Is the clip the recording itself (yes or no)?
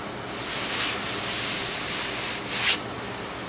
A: yes